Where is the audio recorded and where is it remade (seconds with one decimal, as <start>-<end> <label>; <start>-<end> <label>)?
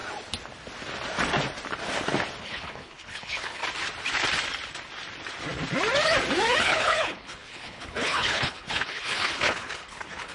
0.0-2.4 recorded; 2.4-3.6 remade; 3.6-6.6 recorded; 6.6-10.3 remade